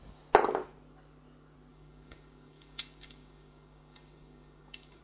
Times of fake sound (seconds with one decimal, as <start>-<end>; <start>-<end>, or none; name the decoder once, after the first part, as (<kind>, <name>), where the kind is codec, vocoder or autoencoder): 1.7-5.0 (codec, DAC)